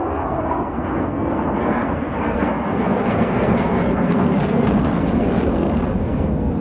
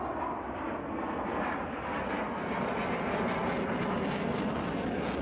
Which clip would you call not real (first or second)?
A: first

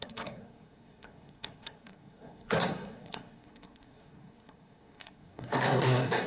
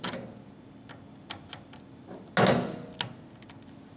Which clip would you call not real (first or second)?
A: first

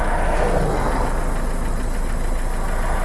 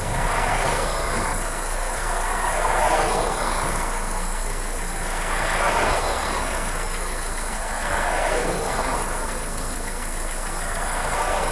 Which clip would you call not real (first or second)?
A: second